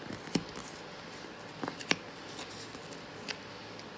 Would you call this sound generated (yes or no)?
no